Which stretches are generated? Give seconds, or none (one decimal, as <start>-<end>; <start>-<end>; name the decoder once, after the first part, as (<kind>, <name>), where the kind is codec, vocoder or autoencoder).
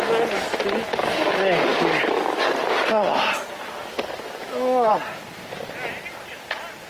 1.7-2.4 (autoencoder, DAC-VAE); 4.4-4.9